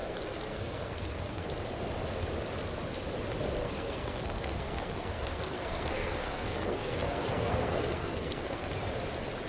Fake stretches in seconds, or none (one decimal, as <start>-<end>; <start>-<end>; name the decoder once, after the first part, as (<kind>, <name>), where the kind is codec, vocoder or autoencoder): 0.0-1.5 (codec, SNAC); 3.6-8.7